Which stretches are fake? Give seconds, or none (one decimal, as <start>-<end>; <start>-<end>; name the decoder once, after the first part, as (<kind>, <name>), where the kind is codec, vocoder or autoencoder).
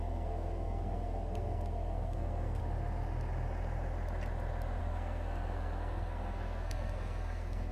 0.0-2.6 (codec, SNAC); 4.8-7.7